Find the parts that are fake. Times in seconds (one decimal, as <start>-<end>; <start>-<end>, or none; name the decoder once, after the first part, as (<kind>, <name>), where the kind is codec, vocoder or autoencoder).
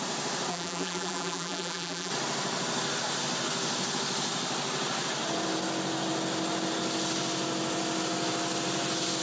0.5-2.1 (vocoder, BigVGAN v2)